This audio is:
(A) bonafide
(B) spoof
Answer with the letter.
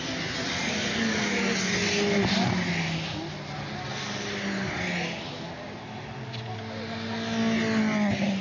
A